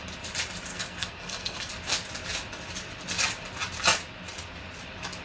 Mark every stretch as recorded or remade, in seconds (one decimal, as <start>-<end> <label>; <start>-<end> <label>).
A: 0.0-0.7 recorded; 0.7-1.7 remade; 1.7-5.2 recorded

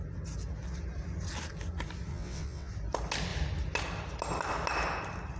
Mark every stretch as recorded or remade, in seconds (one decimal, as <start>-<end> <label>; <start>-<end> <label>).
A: 0.0-2.1 recorded; 2.1-2.7 remade; 2.7-5.4 recorded

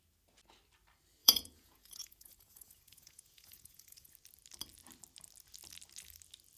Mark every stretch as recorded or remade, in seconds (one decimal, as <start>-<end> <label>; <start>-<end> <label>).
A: 0.0-1.2 recorded; 1.2-4.1 remade; 4.1-6.6 recorded

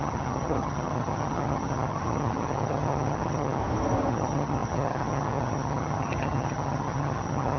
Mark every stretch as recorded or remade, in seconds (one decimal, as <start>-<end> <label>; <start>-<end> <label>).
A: 0.0-3.6 remade; 3.6-4.1 recorded; 4.1-7.6 remade

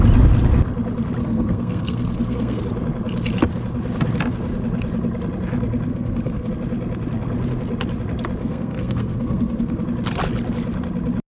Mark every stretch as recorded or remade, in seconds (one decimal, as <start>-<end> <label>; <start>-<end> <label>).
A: 0.0-1.2 recorded; 1.2-2.6 remade; 2.6-5.9 recorded; 5.9-6.5 remade; 6.5-8.4 recorded; 8.4-9.8 remade; 9.8-11.3 recorded